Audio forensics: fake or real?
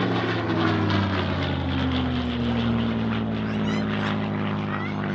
real